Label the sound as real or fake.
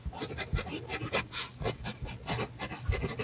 real